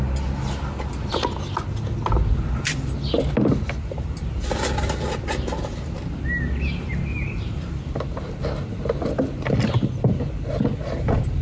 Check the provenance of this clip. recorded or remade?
recorded